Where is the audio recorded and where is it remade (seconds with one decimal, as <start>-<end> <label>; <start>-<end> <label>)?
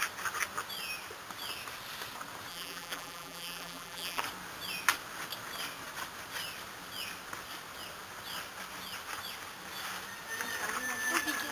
0.0-2.5 recorded; 2.5-4.2 remade; 4.2-11.5 recorded